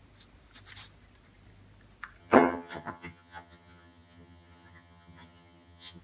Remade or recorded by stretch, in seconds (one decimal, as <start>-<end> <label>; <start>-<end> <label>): 0.0-2.2 recorded; 2.2-6.0 remade